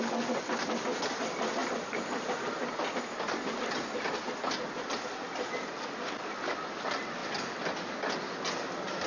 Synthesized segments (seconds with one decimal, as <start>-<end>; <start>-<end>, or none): none